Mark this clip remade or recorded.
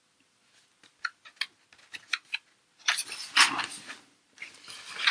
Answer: recorded